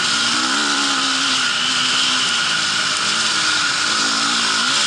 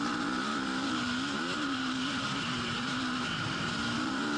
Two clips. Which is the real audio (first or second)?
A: first